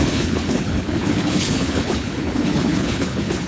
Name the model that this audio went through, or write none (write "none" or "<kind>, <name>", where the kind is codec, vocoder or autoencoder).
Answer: codec, HILCodec